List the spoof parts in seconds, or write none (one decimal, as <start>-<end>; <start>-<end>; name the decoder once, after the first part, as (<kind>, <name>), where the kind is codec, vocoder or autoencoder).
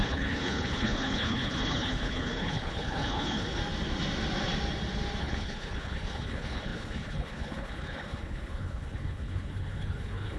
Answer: 0.0-3.6 (codec, HILCodec); 5.2-10.4